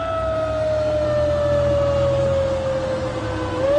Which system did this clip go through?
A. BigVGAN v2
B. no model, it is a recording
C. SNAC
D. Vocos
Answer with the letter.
B